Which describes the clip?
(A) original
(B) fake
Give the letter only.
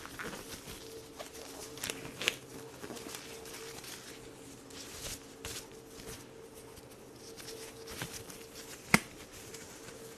B